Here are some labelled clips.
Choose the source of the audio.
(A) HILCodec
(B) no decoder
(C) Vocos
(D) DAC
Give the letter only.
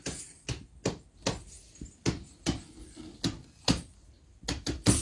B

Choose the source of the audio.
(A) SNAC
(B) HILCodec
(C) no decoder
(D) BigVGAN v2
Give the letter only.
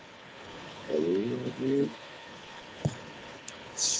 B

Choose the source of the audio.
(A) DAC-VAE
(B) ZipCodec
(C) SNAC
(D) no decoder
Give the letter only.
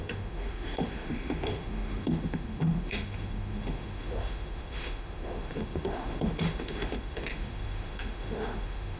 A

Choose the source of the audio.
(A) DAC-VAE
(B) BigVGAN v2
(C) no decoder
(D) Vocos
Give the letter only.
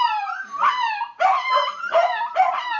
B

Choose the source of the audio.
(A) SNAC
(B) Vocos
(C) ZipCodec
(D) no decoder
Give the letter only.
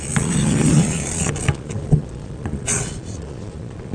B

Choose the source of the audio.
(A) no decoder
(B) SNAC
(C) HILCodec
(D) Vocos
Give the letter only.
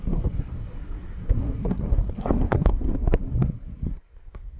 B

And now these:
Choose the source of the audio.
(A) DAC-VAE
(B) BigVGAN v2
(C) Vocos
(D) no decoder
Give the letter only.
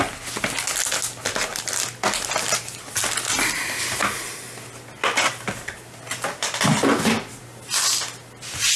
D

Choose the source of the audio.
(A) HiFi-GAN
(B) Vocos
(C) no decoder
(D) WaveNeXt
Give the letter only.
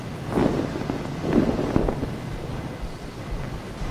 C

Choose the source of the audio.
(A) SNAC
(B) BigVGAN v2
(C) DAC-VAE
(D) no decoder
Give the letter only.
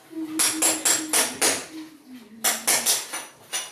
D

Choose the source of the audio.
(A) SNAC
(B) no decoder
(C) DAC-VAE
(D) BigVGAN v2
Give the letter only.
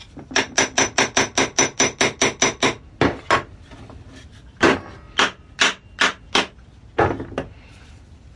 B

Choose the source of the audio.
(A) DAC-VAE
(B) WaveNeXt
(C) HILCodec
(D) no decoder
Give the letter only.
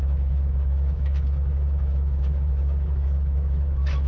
A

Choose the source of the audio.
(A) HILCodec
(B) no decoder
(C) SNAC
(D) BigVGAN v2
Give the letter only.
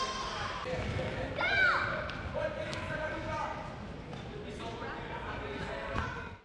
B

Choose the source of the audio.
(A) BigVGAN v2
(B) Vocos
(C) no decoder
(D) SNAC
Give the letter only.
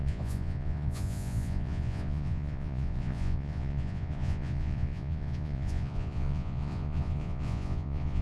B